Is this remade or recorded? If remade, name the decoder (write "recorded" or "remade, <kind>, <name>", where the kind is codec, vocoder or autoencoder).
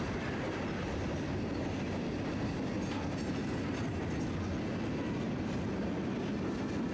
recorded